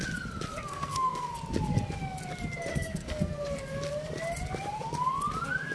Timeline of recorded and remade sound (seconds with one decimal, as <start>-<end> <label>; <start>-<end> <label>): 0.0-0.5 recorded; 0.5-1.3 remade; 1.3-2.7 recorded; 2.7-3.6 remade; 3.6-5.7 recorded

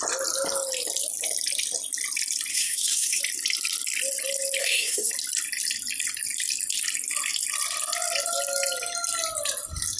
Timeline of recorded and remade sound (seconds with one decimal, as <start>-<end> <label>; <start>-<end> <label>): 0.0-2.5 recorded; 2.5-3.2 remade; 3.2-4.6 recorded; 4.6-5.1 remade; 5.1-10.0 recorded

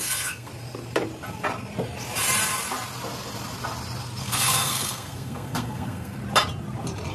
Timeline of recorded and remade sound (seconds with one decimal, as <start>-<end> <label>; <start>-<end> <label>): 0.0-0.5 remade; 0.5-4.2 recorded; 4.2-6.2 remade; 6.2-7.1 recorded

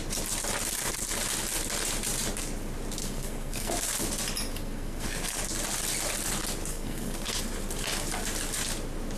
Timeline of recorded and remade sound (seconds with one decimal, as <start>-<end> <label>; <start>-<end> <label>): 0.0-3.0 recorded; 3.0-3.7 remade; 3.7-4.5 recorded; 4.5-5.4 remade; 5.4-6.7 recorded; 6.7-7.4 remade; 7.4-9.2 recorded